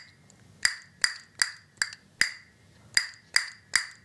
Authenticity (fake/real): real